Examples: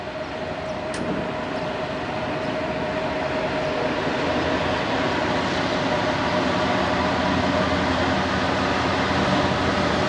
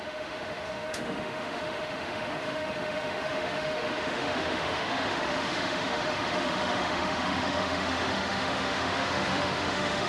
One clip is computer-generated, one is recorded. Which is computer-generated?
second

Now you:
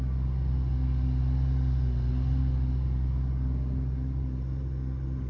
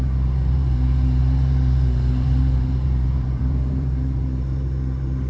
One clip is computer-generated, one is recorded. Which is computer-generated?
second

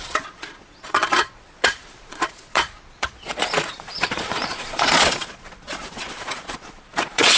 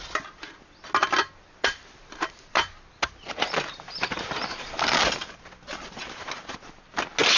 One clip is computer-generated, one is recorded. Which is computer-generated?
first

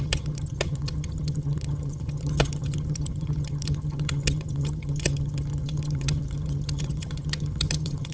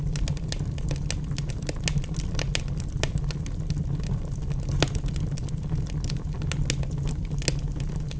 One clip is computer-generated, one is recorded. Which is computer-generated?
first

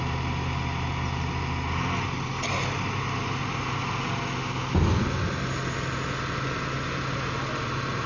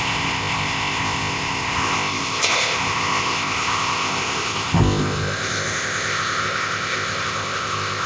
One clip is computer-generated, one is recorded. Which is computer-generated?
second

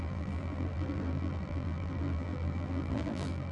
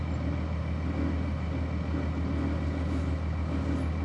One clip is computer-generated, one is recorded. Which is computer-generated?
first